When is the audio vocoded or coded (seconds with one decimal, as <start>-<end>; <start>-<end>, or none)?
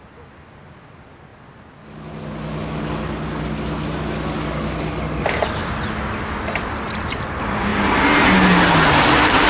none